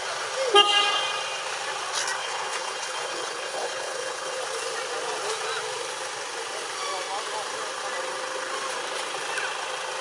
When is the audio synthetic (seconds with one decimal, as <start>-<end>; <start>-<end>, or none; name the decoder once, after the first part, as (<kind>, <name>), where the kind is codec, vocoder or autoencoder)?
2.2-4.4 (codec, HILCodec)